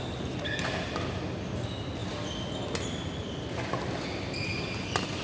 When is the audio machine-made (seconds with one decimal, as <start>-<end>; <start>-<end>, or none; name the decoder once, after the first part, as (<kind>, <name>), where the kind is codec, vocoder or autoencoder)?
none